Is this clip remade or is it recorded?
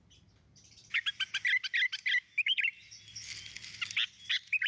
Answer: recorded